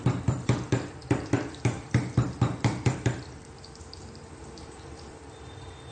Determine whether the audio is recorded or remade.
remade